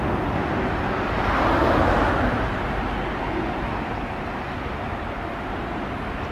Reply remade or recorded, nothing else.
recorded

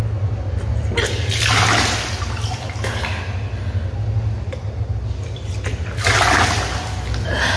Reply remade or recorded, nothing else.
recorded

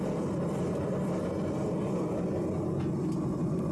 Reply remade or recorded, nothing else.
recorded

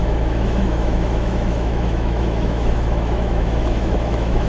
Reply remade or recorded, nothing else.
remade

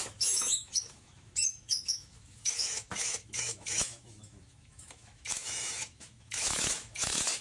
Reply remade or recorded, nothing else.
remade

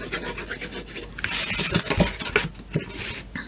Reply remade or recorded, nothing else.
recorded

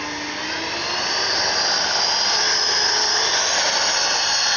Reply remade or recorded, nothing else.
recorded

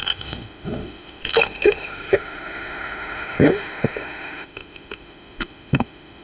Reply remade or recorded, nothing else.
remade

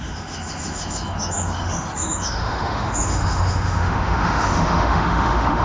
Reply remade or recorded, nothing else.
remade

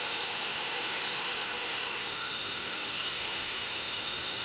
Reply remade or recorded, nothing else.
remade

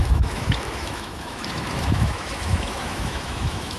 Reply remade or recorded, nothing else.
remade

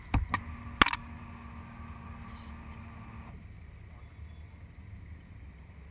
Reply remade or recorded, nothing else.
recorded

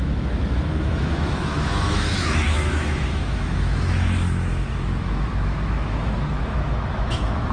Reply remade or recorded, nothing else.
remade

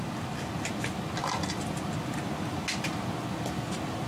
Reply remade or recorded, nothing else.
recorded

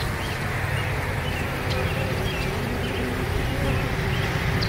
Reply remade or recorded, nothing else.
recorded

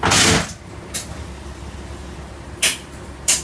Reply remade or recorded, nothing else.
recorded